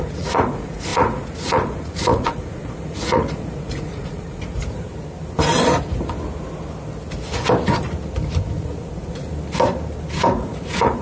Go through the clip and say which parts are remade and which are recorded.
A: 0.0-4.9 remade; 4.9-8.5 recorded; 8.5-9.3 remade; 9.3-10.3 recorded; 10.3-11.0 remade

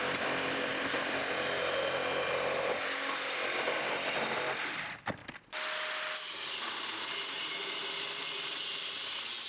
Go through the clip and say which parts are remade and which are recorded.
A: 0.0-9.5 recorded

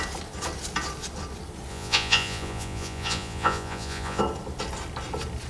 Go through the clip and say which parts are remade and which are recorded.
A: 0.0-1.7 recorded; 1.7-4.2 remade; 4.2-5.5 recorded

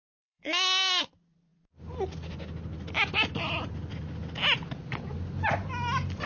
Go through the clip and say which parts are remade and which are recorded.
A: 0.0-1.0 remade; 1.0-6.3 recorded